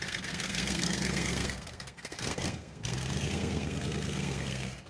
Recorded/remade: remade